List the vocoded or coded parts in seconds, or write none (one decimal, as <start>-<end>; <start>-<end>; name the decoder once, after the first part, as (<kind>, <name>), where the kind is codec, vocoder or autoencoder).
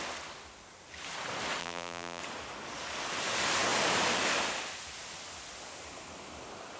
1.6-2.2 (vocoder, BigVGAN v2)